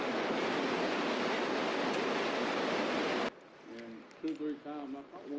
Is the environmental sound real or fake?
real